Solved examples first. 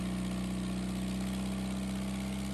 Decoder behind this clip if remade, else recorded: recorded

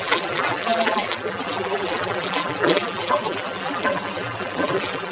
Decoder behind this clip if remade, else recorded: remade, vocoder, BigVGAN v2